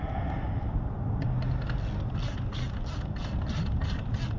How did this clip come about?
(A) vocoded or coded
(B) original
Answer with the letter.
B